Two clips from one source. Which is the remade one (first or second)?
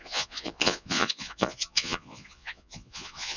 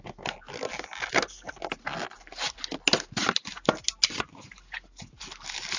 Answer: first